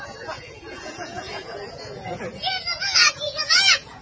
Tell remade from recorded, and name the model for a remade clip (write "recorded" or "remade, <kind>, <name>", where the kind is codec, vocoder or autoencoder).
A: remade, vocoder, Vocos